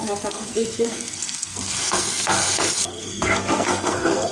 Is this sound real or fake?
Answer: fake